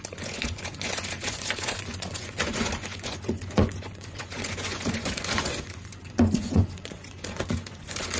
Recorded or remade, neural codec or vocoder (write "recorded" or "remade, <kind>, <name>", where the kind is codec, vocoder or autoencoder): remade, vocoder, Vocos